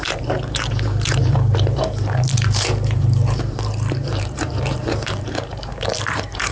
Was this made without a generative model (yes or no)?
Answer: no